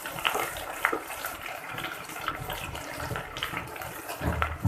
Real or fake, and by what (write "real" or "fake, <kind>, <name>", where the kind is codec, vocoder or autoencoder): fake, vocoder, BigVGAN v2